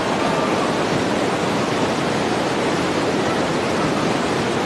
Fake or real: real